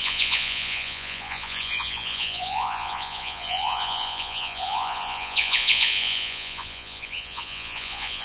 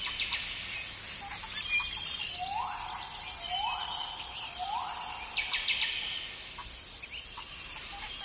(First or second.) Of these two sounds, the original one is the second